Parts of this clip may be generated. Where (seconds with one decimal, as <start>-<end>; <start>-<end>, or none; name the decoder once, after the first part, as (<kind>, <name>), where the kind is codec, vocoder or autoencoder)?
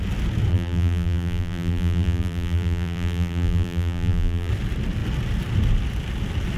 0.5-4.5 (vocoder, BigVGAN v2)